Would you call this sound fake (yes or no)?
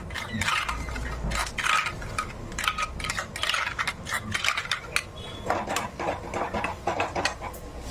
no